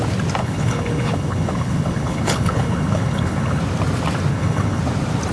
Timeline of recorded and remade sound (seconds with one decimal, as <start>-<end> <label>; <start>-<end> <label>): 0.0-0.4 recorded; 0.4-3.6 remade; 3.6-4.3 recorded; 4.3-4.8 remade; 4.8-5.3 recorded